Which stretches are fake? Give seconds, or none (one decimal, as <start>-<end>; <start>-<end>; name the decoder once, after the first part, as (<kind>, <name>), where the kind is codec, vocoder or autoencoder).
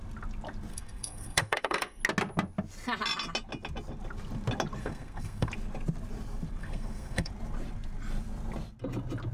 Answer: 0.7-2.0 (codec, SNAC); 4.8-5.5; 6.6-7.3